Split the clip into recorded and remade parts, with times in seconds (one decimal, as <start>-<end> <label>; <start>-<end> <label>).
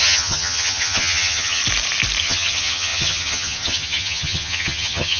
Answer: 0.0-1.6 remade; 1.6-2.2 recorded; 2.2-5.2 remade